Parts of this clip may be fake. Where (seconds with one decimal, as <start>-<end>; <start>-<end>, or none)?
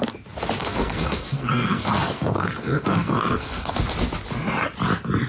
0.6-3.8